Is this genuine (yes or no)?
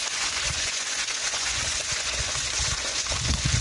no